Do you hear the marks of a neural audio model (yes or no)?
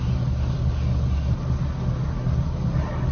no